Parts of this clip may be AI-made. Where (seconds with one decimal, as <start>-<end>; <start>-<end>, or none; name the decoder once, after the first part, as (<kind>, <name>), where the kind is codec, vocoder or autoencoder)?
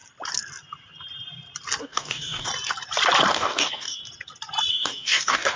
1.8-2.5 (codec, DAC); 3.3-4.0; 4.7-5.6